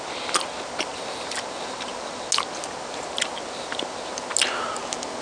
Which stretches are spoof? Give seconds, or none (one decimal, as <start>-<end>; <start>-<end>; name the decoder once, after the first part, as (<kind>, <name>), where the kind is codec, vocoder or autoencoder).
none

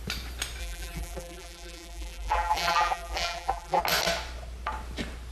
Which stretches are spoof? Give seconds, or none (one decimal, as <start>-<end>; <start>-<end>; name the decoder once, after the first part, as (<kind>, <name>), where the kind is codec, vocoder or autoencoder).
0.6-3.8 (vocoder, BigVGAN v2)

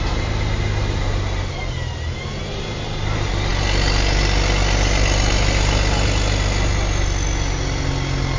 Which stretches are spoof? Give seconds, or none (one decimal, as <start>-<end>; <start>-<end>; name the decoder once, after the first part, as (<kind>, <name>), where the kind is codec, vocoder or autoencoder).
none

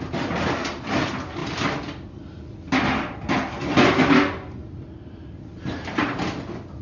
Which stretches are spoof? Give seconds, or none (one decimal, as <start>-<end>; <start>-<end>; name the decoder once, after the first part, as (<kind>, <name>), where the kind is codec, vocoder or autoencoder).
1.4-5.4 (vocoder, BigVGAN v2)

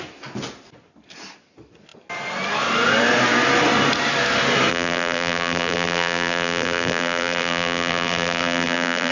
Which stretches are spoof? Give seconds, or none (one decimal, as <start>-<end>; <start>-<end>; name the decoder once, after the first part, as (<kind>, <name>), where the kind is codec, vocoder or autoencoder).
4.7-9.1 (vocoder, BigVGAN v2)